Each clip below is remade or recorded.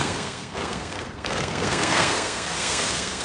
remade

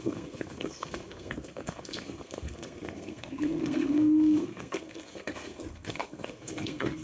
remade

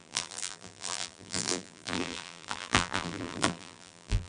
remade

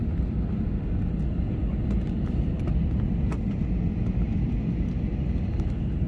recorded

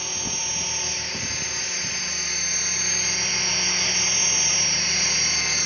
recorded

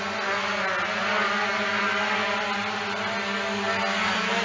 recorded